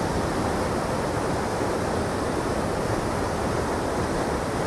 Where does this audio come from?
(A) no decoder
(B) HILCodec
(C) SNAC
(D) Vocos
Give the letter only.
A